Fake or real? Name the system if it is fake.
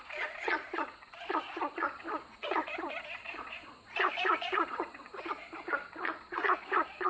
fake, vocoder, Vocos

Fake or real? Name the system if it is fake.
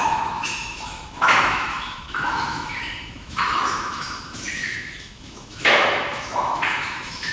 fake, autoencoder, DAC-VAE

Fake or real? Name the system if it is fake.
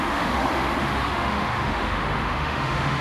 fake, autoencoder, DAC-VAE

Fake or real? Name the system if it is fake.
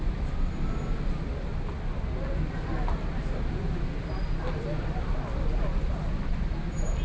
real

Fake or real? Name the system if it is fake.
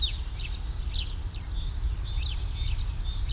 real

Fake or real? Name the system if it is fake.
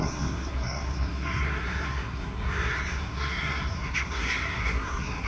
fake, codec, SNAC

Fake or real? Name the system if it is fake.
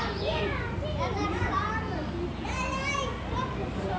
real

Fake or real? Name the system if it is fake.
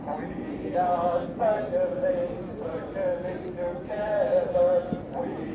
real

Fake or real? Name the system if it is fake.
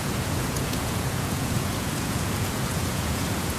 fake, vocoder, Vocos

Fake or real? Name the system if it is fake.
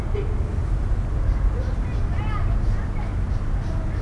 real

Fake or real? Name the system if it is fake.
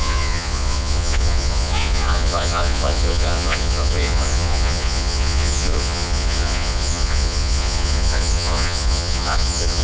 fake, vocoder, Vocos